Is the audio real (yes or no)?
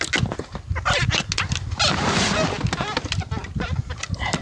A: yes